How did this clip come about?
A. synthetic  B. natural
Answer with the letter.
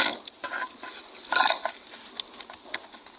B